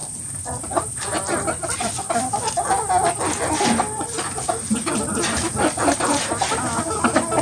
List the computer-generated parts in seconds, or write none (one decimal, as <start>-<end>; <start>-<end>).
0.0-2.2